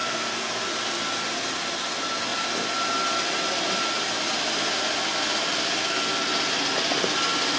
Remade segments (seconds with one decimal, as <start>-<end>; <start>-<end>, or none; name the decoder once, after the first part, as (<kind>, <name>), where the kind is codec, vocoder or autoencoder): 0.0-0.5 (codec, SNAC)